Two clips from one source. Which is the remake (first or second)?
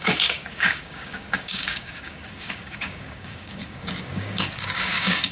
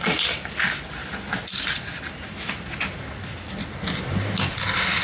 first